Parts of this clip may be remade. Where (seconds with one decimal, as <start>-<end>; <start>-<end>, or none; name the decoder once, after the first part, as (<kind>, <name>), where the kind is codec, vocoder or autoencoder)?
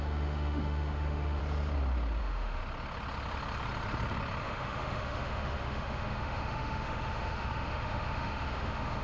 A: 0.0-1.4 (autoencoder, DAC-VAE); 2.2-2.6; 4.4-9.0